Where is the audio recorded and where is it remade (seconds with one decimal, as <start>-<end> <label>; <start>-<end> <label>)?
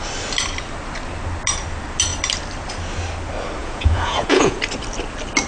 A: 0.0-3.6 recorded; 3.6-4.6 remade; 4.6-5.5 recorded